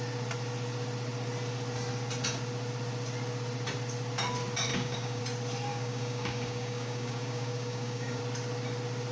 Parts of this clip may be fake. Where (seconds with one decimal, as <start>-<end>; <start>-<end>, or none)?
4.7-5.2; 5.7-8.2